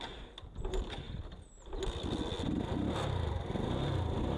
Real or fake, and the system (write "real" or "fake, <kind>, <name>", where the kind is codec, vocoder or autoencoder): real